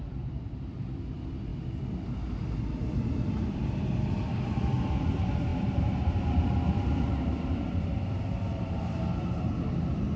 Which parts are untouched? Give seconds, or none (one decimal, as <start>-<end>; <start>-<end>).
1.5-2.8